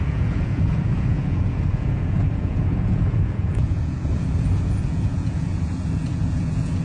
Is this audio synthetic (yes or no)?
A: yes